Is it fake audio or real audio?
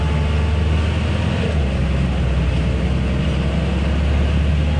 real